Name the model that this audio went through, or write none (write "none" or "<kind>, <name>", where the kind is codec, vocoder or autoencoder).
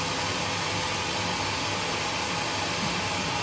none